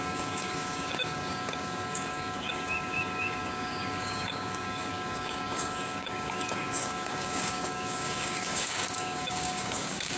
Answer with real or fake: fake